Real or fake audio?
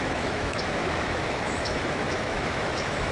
fake